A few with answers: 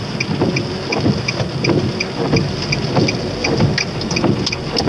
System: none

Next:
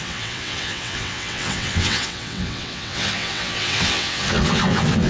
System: vocoder, WaveNeXt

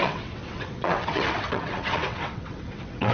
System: vocoder, WaveNeXt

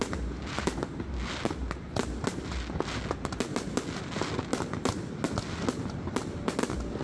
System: none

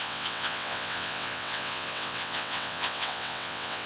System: vocoder, WaveNeXt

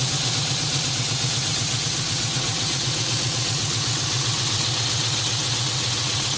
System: vocoder, WaveNeXt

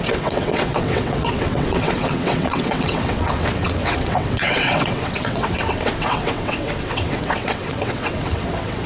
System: vocoder, WaveNeXt